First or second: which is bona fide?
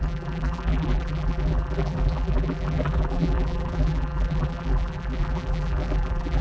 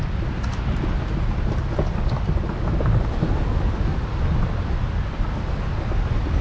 second